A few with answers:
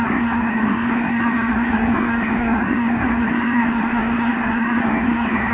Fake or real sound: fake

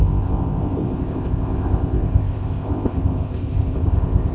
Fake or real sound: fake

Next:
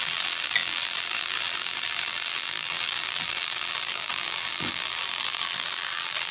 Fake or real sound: fake